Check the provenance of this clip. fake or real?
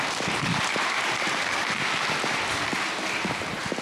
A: real